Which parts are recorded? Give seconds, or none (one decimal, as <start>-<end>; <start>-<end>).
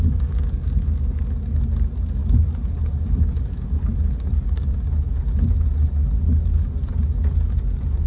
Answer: 1.2-8.1